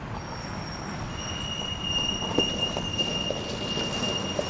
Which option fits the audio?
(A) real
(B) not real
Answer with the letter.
A